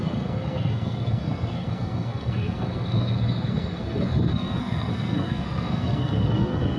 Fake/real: fake